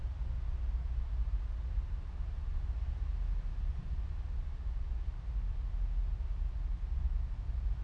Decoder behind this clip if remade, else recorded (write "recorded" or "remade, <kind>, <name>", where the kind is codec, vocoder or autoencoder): recorded